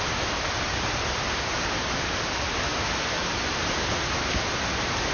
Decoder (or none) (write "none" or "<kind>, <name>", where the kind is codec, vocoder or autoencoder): vocoder, BigVGAN v2